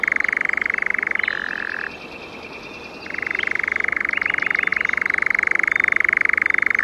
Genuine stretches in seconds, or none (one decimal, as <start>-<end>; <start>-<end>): 0.0-6.8